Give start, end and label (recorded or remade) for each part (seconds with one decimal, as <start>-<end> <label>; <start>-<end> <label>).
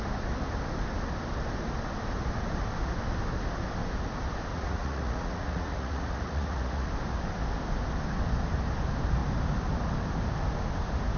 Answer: 0.0-4.5 recorded; 4.5-6.9 remade; 6.9-11.2 recorded